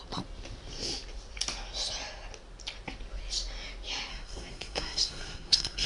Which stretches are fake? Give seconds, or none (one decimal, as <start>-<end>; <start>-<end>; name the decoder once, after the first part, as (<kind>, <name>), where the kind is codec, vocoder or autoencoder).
4.1-5.9 (codec, SNAC)